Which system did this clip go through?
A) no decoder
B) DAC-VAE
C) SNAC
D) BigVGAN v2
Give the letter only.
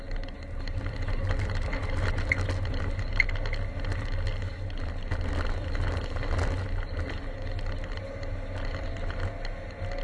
A